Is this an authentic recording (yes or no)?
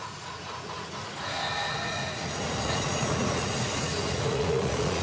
no